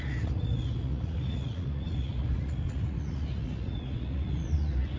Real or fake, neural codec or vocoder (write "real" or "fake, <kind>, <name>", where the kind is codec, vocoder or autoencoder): fake, vocoder, Vocos